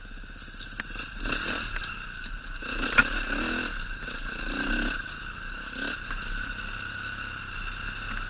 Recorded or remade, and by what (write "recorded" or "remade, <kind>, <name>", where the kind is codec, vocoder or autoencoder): recorded